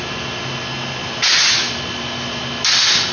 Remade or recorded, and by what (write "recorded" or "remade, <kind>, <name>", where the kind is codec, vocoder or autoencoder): recorded